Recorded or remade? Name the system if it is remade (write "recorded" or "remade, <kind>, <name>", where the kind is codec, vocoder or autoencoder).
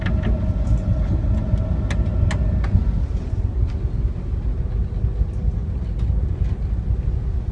recorded